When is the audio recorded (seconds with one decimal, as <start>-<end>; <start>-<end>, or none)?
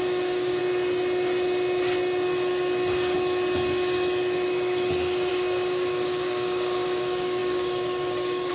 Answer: 0.6-5.3